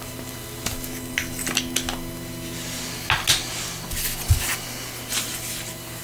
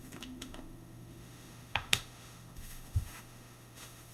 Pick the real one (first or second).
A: first